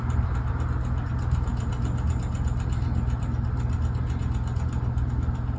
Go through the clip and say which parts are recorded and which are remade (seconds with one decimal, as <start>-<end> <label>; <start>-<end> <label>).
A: 0.0-5.6 recorded